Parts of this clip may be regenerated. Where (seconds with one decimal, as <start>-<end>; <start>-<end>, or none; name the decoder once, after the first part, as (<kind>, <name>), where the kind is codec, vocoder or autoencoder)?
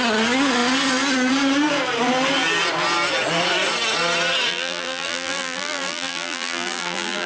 4.5-7.3 (vocoder, BigVGAN v2)